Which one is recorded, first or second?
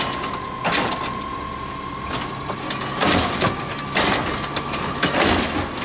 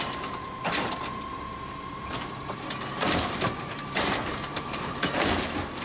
first